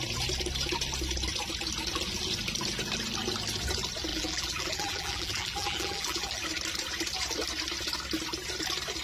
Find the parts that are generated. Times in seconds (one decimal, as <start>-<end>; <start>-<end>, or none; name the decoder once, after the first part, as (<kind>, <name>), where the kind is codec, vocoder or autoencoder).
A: 4.1-6.4 (vocoder, BigVGAN v2)